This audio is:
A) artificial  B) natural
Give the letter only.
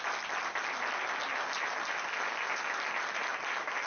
B